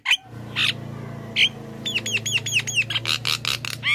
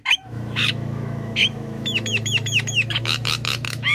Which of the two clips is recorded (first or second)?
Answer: first